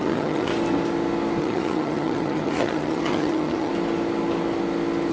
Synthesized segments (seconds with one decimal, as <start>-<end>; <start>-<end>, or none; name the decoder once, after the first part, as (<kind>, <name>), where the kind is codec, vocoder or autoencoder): 0.0-0.5 (vocoder, HiFi-GAN); 1.4-3.7